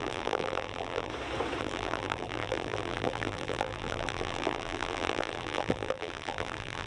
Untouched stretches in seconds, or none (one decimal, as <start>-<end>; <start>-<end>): 1.1-1.6